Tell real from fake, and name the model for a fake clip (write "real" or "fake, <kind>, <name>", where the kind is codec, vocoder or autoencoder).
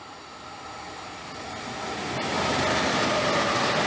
real